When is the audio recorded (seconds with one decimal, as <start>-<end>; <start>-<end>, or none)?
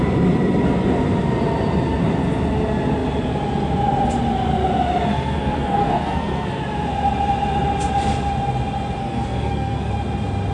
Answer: 0.0-5.1; 6.6-9.0; 9.9-10.5